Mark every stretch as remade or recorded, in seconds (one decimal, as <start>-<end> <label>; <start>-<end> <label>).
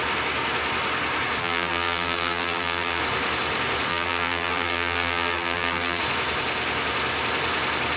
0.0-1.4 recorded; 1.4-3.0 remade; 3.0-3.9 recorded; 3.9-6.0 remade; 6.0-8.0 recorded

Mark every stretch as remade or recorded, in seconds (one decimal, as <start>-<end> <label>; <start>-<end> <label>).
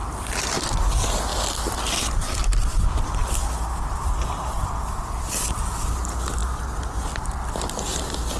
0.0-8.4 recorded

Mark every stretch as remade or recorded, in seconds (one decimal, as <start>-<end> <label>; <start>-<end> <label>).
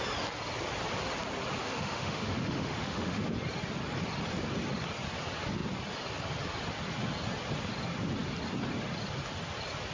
0.0-1.6 recorded; 1.6-3.2 remade; 3.2-9.9 recorded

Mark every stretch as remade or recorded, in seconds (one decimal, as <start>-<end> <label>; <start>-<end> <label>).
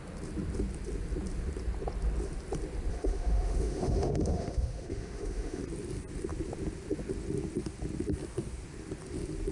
0.0-2.9 recorded; 2.9-5.6 remade; 5.6-9.5 recorded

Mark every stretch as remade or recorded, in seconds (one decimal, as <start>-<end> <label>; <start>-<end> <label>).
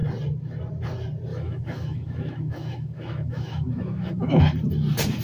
0.0-1.3 recorded; 1.3-4.4 remade; 4.4-5.2 recorded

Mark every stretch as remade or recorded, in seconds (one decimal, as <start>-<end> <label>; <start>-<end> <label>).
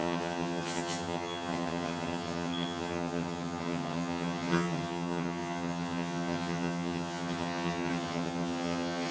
0.0-9.1 remade